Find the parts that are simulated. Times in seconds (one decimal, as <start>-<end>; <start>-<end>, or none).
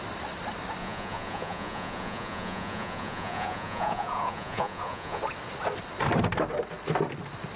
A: 0.8-5.2